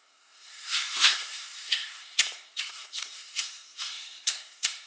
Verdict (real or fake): fake